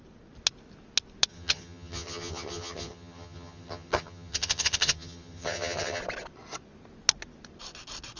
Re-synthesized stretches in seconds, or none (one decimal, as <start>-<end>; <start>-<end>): 1.3-6.0